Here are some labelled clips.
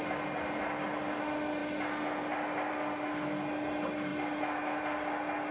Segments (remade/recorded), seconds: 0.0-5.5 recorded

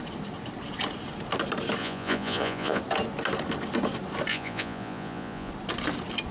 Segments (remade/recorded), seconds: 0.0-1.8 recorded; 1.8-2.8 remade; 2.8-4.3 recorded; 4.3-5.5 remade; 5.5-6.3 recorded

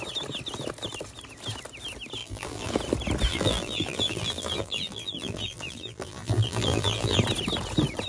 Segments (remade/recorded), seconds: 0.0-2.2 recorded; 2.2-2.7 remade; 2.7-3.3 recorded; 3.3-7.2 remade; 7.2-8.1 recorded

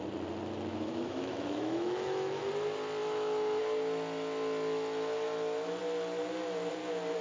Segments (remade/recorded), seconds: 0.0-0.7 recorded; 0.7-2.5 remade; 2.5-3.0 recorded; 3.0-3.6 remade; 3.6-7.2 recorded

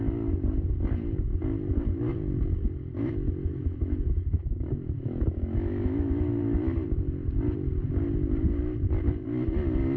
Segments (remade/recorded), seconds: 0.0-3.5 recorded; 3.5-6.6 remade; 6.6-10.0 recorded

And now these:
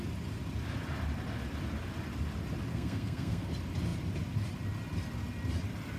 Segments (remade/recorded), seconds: 0.0-2.7 recorded; 2.7-3.5 remade; 3.5-6.0 recorded